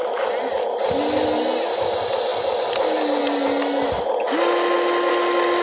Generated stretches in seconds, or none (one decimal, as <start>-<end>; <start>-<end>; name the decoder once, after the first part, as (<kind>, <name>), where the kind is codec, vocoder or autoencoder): none